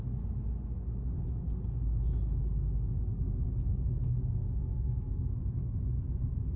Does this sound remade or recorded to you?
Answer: recorded